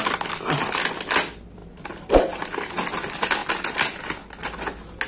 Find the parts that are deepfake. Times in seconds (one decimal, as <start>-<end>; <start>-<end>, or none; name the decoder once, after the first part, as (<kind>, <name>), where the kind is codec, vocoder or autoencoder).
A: none